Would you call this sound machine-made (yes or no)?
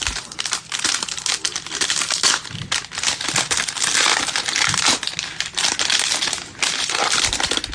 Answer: no